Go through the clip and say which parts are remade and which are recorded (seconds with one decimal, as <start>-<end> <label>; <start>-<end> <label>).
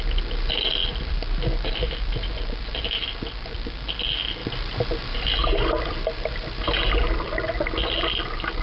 0.0-0.8 recorded; 0.8-1.9 remade; 1.9-4.4 recorded; 4.4-5.4 remade; 5.4-8.6 recorded